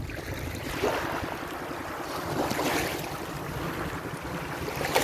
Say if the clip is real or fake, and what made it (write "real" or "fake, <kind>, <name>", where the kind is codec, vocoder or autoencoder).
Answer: real